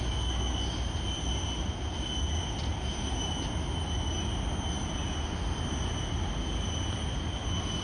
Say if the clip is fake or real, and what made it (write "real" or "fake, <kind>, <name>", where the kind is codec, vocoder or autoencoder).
real